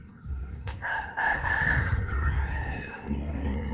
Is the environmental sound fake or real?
fake